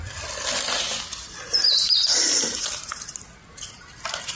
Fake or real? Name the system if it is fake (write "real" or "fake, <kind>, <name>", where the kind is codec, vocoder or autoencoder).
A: real